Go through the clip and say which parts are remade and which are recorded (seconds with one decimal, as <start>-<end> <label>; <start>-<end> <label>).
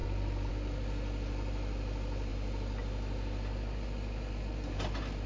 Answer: 0.0-2.3 remade; 2.3-5.3 recorded